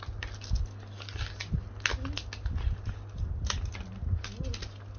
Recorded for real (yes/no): yes